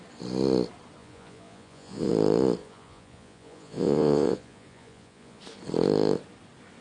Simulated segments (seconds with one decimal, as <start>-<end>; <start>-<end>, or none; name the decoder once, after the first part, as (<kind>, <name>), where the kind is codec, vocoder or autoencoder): 1.0-2.1 (vocoder, Vocos); 2.6-5.4